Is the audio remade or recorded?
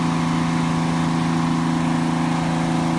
recorded